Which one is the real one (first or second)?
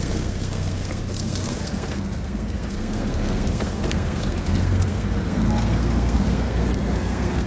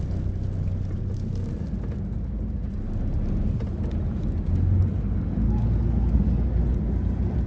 second